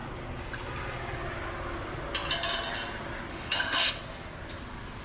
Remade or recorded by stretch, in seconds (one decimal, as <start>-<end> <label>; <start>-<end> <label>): 0.0-3.3 recorded; 3.3-3.9 remade; 3.9-5.0 recorded